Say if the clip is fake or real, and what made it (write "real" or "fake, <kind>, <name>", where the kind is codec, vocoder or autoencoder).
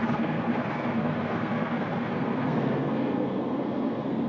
fake, codec, SNAC